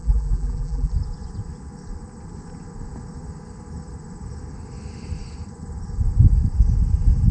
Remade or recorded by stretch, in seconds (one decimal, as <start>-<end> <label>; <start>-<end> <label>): 0.0-0.9 remade; 0.9-7.3 recorded